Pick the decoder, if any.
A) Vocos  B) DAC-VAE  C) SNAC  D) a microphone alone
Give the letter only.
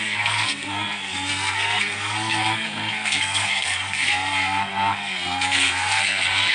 C